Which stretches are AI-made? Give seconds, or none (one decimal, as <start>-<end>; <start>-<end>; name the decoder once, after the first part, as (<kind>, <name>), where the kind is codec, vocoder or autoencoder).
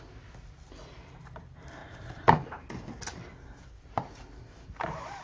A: 1.8-5.2 (vocoder, BigVGAN v2)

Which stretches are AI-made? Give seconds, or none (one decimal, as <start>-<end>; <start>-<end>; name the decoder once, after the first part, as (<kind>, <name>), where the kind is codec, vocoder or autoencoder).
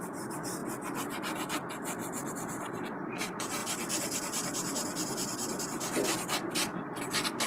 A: 0.0-0.6 (vocoder, BigVGAN v2); 2.3-3.6; 5.6-7.5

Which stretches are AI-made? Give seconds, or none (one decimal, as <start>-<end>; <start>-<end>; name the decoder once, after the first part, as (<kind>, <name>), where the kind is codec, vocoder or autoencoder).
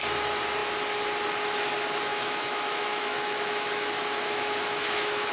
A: 2.1-5.3 (autoencoder, DAC-VAE)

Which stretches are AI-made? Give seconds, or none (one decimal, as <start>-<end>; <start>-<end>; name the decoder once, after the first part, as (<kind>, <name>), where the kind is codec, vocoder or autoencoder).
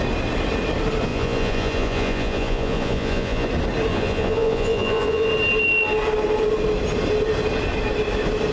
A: 1.1-3.5 (vocoder, Vocos); 3.9-5.3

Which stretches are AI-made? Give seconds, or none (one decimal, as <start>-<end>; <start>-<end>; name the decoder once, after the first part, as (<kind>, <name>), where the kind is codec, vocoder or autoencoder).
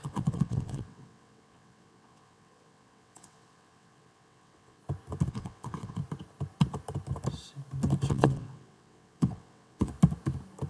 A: 0.0-4.8 (vocoder, WaveNeXt); 5.3-6.0; 8.1-9.9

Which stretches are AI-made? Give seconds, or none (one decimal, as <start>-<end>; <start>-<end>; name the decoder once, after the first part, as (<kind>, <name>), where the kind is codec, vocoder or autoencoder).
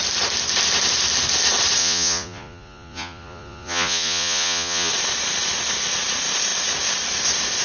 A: 1.8-4.9 (vocoder, Vocos)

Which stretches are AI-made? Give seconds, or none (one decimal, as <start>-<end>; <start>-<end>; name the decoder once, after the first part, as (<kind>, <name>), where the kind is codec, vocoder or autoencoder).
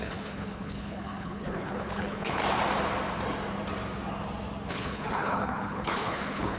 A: 0.0-2.4 (codec, HILCodec); 4.7-6.6